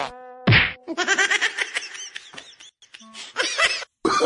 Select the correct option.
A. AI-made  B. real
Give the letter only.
B